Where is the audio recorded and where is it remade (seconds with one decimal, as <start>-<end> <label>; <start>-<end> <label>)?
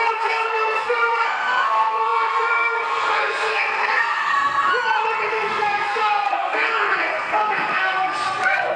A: 0.0-4.7 remade; 4.7-5.3 recorded; 5.3-8.8 remade